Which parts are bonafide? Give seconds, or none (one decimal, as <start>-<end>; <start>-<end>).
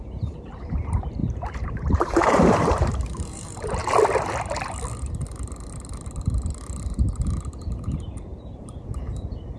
3.8-7.6